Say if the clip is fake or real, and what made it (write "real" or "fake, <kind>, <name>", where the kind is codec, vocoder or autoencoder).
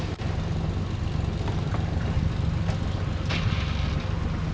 real